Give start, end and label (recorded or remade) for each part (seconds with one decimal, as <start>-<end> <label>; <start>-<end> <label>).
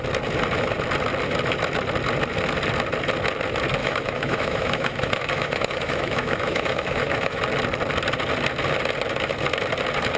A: 0.0-3.8 recorded; 3.8-7.4 remade; 7.4-10.2 recorded